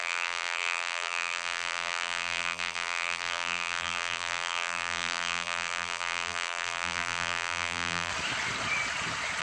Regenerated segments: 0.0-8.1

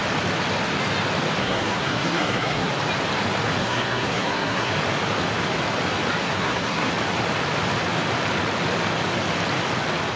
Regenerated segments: 1.4-2.7; 3.6-4.7; 6.2-6.9

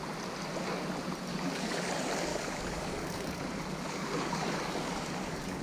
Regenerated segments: 1.3-1.9; 2.3-5.6